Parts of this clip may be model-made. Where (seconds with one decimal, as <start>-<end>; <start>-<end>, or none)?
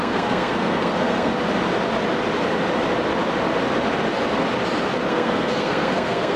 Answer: 0.0-1.3; 5.1-6.4